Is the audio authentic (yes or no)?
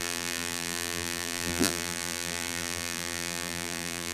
no